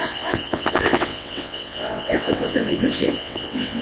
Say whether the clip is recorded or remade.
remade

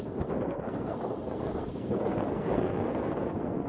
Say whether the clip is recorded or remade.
remade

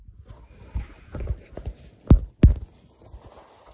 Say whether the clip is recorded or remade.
recorded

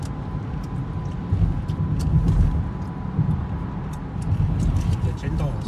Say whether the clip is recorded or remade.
recorded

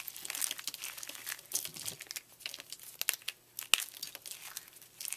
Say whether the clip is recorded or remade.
recorded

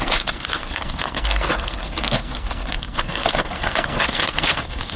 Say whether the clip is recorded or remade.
remade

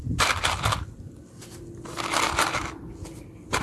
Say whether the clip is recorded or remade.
recorded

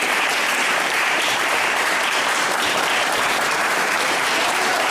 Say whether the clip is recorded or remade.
remade